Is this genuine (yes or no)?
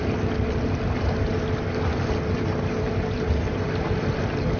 yes